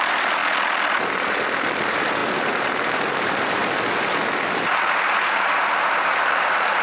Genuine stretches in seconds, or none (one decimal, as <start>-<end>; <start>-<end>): 0.4-0.9; 3.6-4.1